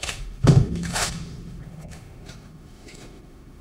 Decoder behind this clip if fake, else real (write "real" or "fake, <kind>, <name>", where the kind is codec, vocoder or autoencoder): fake, autoencoder, DAC-VAE